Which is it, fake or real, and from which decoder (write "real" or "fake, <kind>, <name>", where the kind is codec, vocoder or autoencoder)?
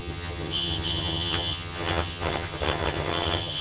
fake, vocoder, HiFi-GAN